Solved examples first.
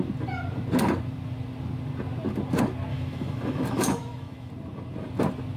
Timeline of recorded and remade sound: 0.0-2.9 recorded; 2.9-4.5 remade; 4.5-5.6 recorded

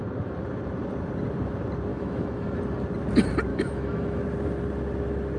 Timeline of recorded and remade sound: 0.0-1.9 recorded; 1.9-2.6 remade; 2.6-3.5 recorded; 3.5-4.2 remade; 4.2-5.4 recorded

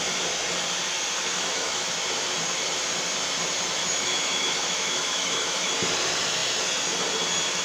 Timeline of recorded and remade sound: 0.0-1.3 recorded; 1.3-1.9 remade; 1.9-3.8 recorded; 3.8-5.7 remade; 5.7-7.6 recorded

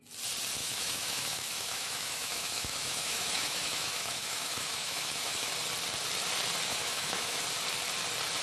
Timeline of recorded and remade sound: 0.0-0.6 recorded; 0.6-5.5 remade; 5.5-6.7 recorded; 6.7-7.4 remade; 7.4-8.4 recorded

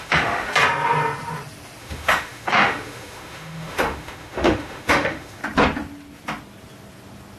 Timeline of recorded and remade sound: 0.0-0.5 remade; 0.5-1.8 recorded; 1.8-5.4 remade; 5.4-7.4 recorded

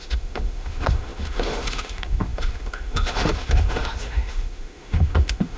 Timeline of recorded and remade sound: 0.0-5.6 remade